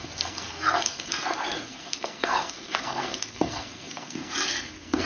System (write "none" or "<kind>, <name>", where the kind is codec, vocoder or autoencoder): codec, SNAC